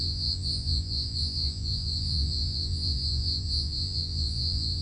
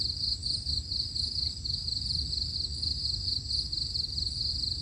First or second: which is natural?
second